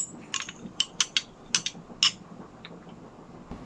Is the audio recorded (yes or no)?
yes